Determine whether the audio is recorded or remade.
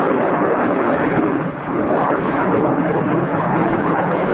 remade